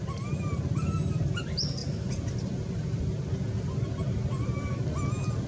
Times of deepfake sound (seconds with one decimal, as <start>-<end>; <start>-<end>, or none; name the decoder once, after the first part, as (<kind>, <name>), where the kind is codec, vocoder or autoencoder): none